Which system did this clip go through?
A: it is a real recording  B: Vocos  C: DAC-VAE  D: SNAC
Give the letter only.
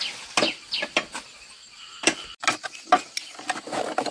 A